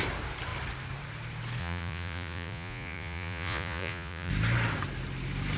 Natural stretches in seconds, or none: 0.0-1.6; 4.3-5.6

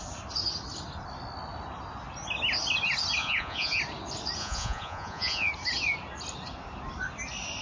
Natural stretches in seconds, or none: 0.0-3.2; 3.8-4.4; 5.5-7.6